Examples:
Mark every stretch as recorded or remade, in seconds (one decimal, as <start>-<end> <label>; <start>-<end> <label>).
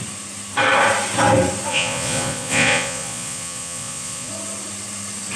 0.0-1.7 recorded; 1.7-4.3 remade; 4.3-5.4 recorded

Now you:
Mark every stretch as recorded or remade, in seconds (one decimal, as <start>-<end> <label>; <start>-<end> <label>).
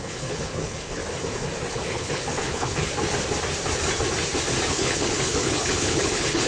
0.0-1.0 remade; 1.0-1.7 recorded; 1.7-2.9 remade; 2.9-4.7 recorded; 4.7-6.5 remade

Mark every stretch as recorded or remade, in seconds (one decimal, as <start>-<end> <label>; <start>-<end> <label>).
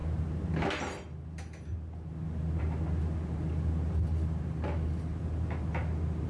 0.0-6.3 recorded